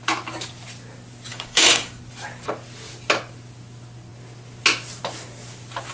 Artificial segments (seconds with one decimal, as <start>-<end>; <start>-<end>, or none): 1.3-2.0